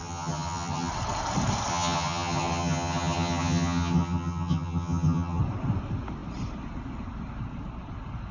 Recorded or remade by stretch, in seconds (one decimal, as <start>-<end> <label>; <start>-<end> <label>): 0.0-0.9 remade; 0.9-1.7 recorded; 1.7-5.4 remade; 5.4-8.3 recorded